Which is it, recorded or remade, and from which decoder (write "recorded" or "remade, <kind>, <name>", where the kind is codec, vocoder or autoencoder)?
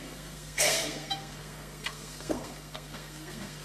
remade, codec, SNAC